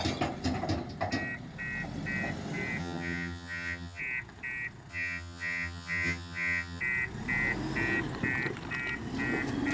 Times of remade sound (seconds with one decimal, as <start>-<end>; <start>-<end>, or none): 2.8-4.0; 4.9-6.8